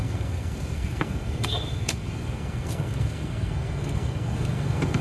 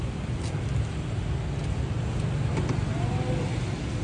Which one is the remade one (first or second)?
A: first